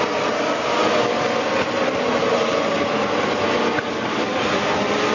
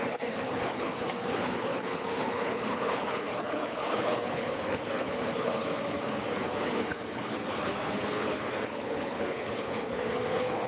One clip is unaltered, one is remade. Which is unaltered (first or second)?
first